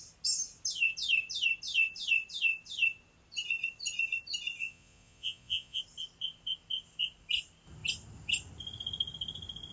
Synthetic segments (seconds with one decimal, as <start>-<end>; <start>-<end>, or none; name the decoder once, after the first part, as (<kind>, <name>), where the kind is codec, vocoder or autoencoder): 4.6-5.8 (vocoder, Vocos)